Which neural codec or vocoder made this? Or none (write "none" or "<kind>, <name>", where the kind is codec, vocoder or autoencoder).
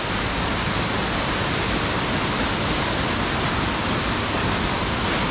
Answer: none